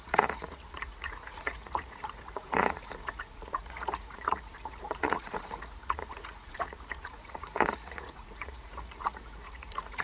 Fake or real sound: fake